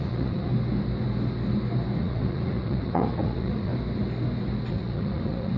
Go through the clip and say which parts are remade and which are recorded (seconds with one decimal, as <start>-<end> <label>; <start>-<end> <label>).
0.0-0.5 remade; 0.5-2.0 recorded; 2.0-3.7 remade; 3.7-4.7 recorded; 4.7-5.6 remade